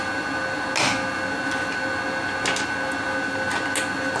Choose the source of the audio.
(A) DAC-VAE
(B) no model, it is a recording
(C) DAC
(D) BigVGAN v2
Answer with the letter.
B